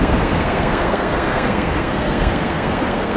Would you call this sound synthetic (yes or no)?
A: yes